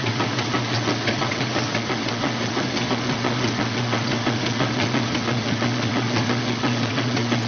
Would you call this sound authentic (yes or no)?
no